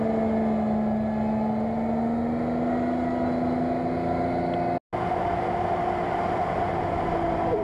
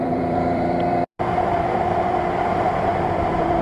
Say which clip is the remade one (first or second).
second